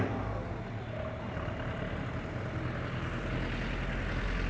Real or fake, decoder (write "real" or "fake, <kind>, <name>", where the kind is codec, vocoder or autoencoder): real